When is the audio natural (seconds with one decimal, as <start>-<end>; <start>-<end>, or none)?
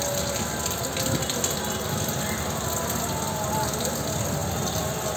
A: 0.0-5.2